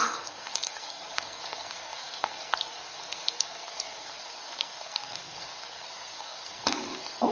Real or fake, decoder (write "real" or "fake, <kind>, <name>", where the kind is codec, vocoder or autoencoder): fake, codec, SNAC